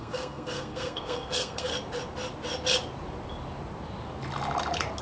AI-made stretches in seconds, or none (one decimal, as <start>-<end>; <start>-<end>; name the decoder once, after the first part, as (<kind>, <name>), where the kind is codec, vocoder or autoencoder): 0.0-1.7 (codec, SNAC)